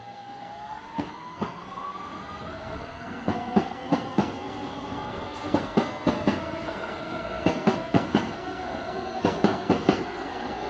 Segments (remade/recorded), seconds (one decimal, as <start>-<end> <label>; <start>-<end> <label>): 0.0-10.7 remade